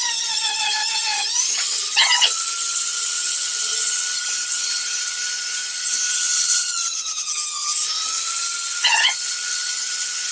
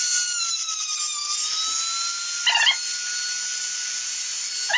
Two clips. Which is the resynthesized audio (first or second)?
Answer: first